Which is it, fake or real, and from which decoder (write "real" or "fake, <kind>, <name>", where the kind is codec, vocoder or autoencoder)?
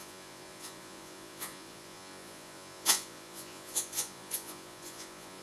fake, vocoder, Vocos